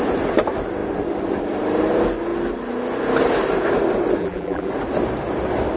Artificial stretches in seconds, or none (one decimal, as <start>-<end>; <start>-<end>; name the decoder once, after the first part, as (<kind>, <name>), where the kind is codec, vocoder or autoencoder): 4.2-4.7 (vocoder, BigVGAN v2)